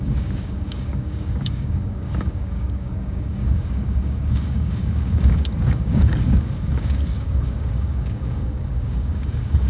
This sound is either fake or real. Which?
fake